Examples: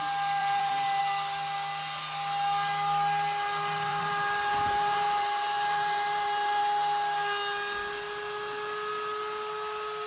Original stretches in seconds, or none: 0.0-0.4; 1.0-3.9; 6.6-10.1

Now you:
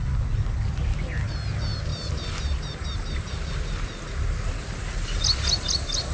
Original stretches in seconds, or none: 0.0-6.1

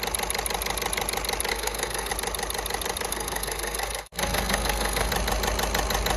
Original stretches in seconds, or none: 0.0-1.5; 2.1-3.1; 5.1-6.2

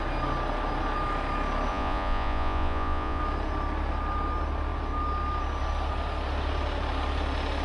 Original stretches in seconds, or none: 0.0-1.7; 3.2-7.6

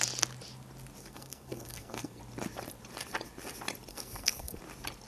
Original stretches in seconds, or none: 0.0-1.0; 2.2-3.9; 4.6-5.1

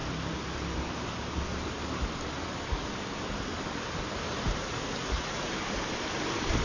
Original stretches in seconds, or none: 0.0-5.0; 5.5-6.6

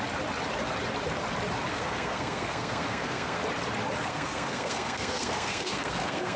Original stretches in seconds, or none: 0.0-1.7; 3.4-4.1

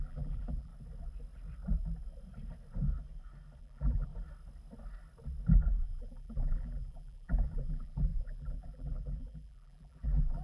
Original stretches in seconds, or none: 0.7-3.6; 4.1-5.8